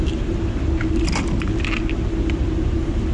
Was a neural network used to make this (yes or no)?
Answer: no